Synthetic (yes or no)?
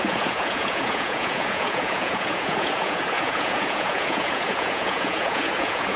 yes